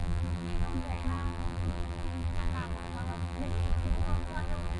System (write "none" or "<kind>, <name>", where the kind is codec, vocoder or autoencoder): vocoder, BigVGAN v2